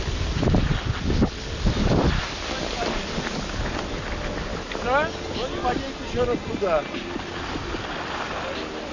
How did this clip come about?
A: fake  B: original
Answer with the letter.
B